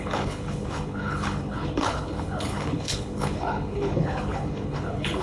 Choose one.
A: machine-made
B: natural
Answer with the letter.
A